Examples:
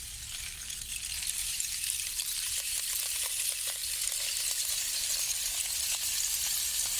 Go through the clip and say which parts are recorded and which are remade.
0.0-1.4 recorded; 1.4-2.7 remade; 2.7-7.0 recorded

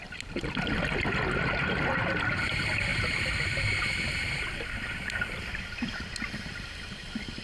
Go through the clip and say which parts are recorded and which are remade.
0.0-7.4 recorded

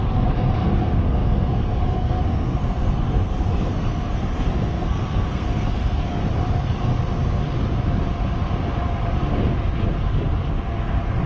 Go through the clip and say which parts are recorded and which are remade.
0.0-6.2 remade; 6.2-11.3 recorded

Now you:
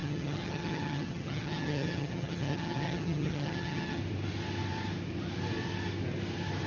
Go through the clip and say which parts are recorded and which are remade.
0.0-4.0 remade; 4.0-6.7 recorded